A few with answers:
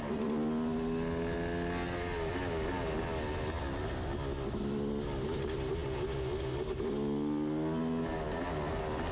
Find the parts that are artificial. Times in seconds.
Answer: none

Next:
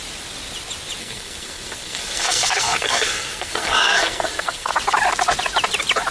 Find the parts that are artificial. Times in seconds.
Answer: 1.0-4.7 (codec, SNAC)

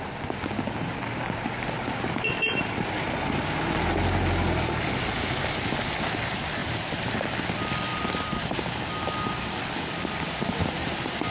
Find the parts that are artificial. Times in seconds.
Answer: 6.6-7.1 (vocoder, BigVGAN v2); 7.9-8.9

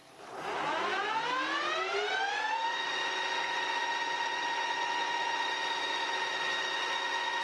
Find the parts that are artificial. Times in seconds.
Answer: 2.3-7.4 (vocoder, Vocos)

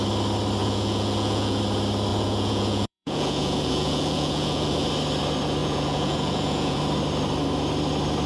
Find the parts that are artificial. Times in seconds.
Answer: 0.6-1.6 (vocoder, Vocos); 2.1-4.9; 5.6-6.8

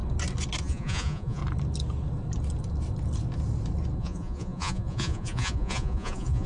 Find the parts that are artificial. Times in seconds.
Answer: 0.6-1.4 (vocoder, Vocos); 4.0-6.5